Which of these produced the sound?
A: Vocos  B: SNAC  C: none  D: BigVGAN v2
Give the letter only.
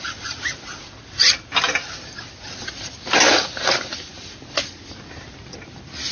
C